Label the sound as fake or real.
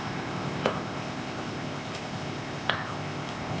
fake